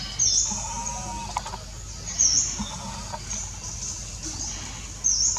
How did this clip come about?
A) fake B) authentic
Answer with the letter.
B